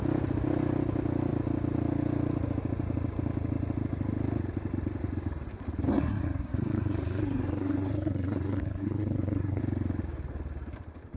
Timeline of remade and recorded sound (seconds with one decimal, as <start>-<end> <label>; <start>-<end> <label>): 0.0-5.9 recorded; 5.9-9.6 remade; 9.6-11.2 recorded